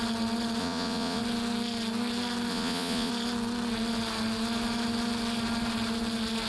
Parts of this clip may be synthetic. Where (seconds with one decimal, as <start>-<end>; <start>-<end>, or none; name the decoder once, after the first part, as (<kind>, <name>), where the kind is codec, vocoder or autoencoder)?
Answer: 0.6-1.2 (vocoder, Vocos); 2.5-3.1